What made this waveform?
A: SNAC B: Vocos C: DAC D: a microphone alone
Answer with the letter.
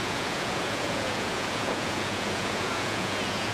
B